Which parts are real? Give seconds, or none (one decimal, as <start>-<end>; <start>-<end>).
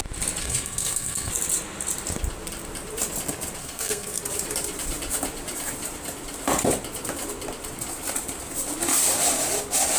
0.0-0.4; 1.3-3.6; 4.2-10.0